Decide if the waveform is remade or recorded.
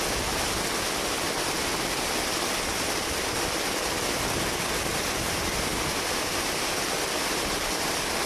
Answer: recorded